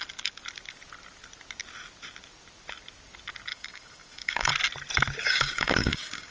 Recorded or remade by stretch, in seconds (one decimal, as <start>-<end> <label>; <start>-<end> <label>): 0.0-3.5 recorded; 3.5-4.5 remade; 4.5-5.2 recorded; 5.2-6.3 remade